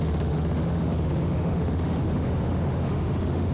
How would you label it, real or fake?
fake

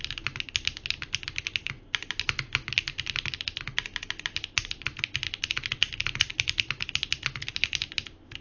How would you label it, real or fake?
real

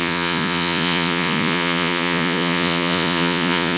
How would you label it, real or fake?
fake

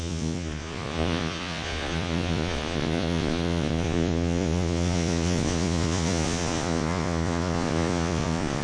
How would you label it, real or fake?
fake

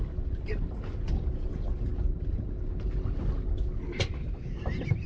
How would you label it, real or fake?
real